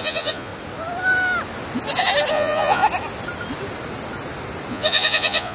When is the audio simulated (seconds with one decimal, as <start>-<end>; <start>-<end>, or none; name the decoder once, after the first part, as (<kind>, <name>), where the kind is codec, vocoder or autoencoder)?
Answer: 0.0-0.5 (vocoder, Vocos); 2.3-2.8; 4.7-5.5

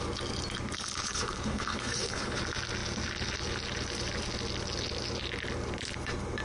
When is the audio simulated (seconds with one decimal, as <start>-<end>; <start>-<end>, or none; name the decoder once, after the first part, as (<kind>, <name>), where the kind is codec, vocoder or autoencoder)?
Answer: 1.0-2.4 (codec, HILCodec)

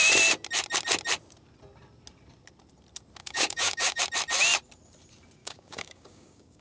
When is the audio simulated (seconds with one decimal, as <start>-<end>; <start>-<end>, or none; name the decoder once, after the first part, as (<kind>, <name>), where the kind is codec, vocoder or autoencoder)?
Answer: 3.2-4.0 (codec, DAC); 5.4-6.6

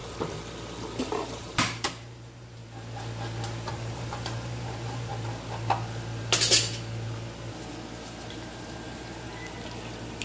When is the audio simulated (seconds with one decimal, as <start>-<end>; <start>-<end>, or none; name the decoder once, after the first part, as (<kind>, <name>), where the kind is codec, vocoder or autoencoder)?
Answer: 1.0-2.6 (vocoder, BigVGAN v2); 3.7-5.1; 8.3-9.3

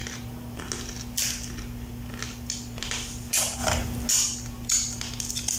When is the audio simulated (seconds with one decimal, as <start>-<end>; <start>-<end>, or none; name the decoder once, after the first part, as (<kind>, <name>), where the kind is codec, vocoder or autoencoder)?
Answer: 2.8-5.6 (vocoder, BigVGAN v2)

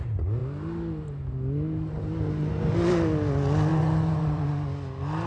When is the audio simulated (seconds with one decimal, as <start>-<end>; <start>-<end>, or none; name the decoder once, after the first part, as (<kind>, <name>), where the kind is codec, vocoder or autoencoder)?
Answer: 3.7-4.5 (vocoder, Vocos)

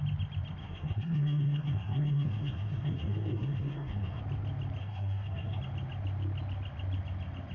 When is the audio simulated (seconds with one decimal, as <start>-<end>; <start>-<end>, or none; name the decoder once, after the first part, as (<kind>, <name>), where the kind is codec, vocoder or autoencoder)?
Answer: 0.6-4.2 (codec, SNAC); 4.8-5.6